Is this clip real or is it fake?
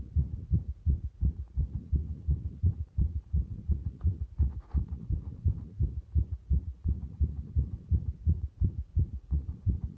fake